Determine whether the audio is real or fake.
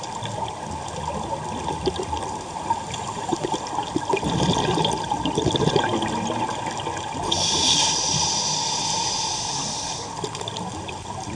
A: real